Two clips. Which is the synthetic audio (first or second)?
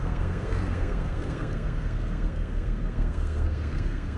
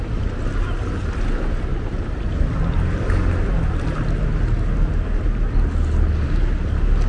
first